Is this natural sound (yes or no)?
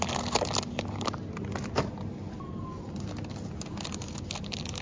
yes